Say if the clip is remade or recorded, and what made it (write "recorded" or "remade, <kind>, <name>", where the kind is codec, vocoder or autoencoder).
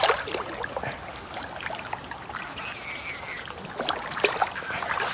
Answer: recorded